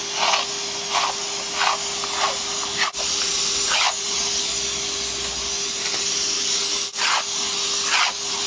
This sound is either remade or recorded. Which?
recorded